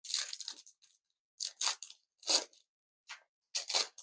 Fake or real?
real